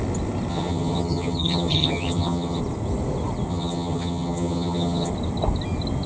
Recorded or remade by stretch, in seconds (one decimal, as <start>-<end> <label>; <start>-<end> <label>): 0.0-0.5 recorded; 0.5-2.6 remade; 2.6-3.5 recorded; 3.5-5.1 remade; 5.1-6.1 recorded